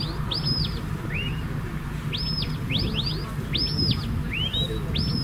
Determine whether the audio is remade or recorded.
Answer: recorded